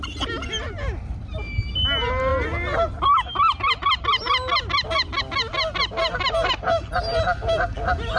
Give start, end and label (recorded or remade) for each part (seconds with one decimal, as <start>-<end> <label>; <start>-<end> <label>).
0.0-8.2 recorded